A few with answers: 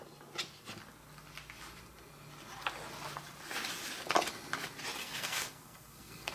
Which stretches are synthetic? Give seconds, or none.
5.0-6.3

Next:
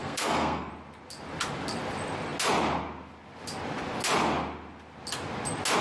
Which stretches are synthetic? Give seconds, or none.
0.0-0.7

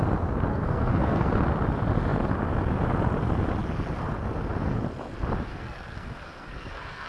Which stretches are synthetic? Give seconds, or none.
0.5-1.3; 5.5-7.1